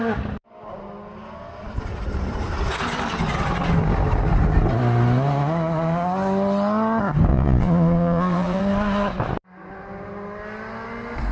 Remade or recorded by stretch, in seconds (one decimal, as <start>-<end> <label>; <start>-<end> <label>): 0.0-7.3 recorded; 7.3-8.6 remade; 8.6-11.3 recorded

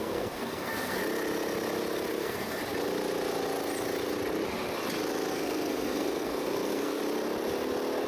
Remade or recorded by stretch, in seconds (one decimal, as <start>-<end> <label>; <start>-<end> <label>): 0.0-1.0 remade; 1.0-2.1 recorded; 2.1-2.6 remade; 2.6-5.3 recorded; 5.3-7.0 remade; 7.0-8.1 recorded

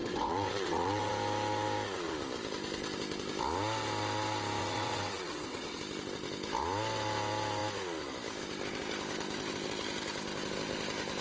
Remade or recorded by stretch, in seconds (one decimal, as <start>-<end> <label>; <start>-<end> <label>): 0.0-1.1 remade; 1.1-4.6 recorded; 4.6-5.8 remade; 5.8-11.2 recorded